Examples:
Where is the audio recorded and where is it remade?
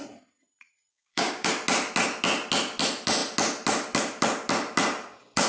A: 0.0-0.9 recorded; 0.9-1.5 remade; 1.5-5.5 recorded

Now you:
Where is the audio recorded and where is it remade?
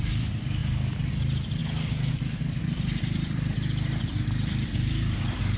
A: 0.0-1.6 remade; 1.6-2.1 recorded; 2.1-5.6 remade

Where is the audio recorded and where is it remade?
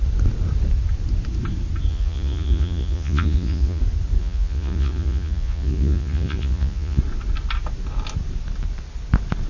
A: 0.0-1.9 recorded; 1.9-3.8 remade; 3.8-4.2 recorded; 4.2-7.0 remade; 7.0-9.5 recorded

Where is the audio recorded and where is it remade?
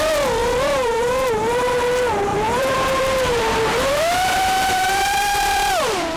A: 0.0-0.4 recorded; 0.4-1.1 remade; 1.1-2.3 recorded; 2.3-6.2 remade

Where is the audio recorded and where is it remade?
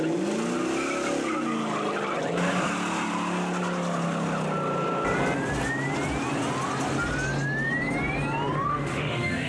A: 0.0-8.7 recorded; 8.7-9.5 remade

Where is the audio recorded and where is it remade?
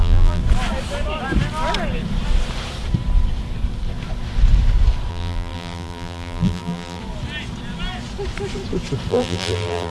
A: 0.0-0.4 remade; 0.4-5.1 recorded; 5.1-7.0 remade; 7.0-9.1 recorded; 9.1-9.9 remade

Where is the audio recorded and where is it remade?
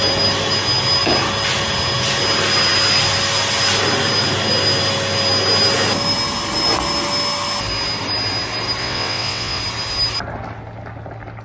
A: 0.0-8.8 recorded; 8.8-9.6 remade; 9.6-11.4 recorded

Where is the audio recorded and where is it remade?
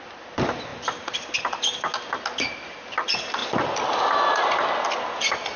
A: 0.0-5.6 recorded